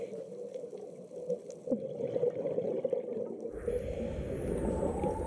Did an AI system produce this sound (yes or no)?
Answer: no